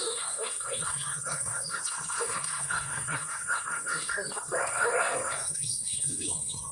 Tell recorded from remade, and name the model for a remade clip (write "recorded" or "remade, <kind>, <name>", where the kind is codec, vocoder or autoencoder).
remade, codec, SNAC